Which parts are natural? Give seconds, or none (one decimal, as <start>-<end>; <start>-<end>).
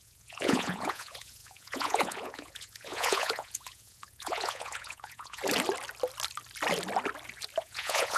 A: 5.4-7.6